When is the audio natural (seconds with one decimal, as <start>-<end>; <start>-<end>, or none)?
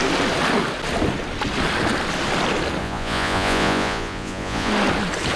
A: 0.0-2.8; 4.7-5.4